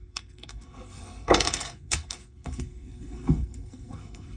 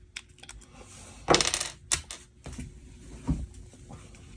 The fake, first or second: first